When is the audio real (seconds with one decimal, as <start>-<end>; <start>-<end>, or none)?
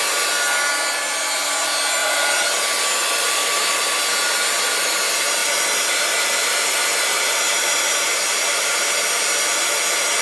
0.0-2.0; 2.6-3.0; 4.0-5.4; 8.2-10.2